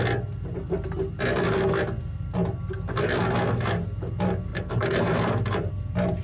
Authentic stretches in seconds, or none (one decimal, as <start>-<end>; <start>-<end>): 0.0-4.5; 5.7-6.2